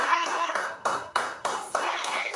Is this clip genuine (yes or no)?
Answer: no